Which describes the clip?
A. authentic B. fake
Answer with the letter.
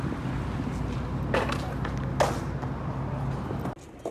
A